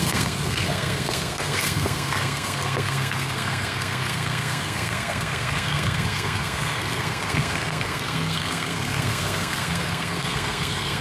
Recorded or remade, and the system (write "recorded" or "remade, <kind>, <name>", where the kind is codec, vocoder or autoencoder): remade, codec, SNAC